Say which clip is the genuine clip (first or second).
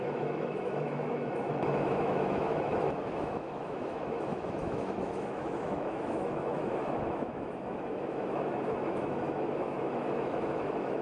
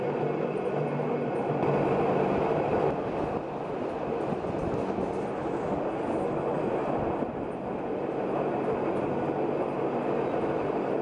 second